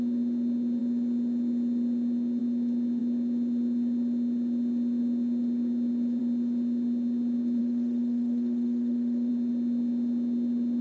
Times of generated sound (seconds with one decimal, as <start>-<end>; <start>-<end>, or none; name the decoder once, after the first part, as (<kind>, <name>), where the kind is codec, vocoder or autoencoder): 7.6-9.3 (autoencoder, DAC-VAE)